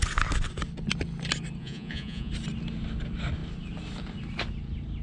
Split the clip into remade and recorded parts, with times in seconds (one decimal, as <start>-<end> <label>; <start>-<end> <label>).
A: 0.0-1.6 recorded; 1.6-2.3 remade; 2.3-5.0 recorded